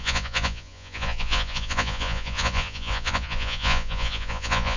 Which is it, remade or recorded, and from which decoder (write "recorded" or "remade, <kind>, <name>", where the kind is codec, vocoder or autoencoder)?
remade, vocoder, Vocos